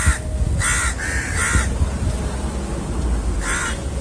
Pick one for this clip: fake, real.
real